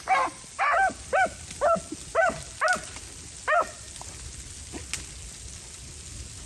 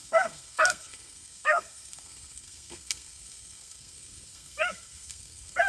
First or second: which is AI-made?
second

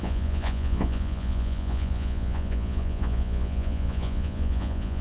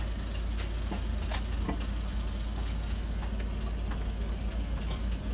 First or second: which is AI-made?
first